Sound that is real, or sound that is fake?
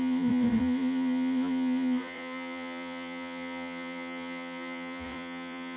fake